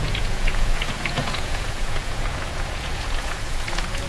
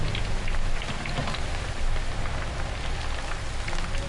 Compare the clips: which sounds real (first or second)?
second